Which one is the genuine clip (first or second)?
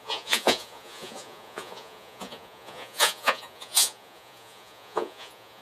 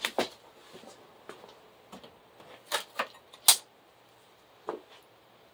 second